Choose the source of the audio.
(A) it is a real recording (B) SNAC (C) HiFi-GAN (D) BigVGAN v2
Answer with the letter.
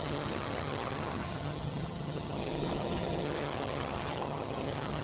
C